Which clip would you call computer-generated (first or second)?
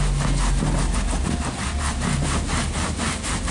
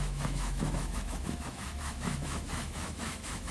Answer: second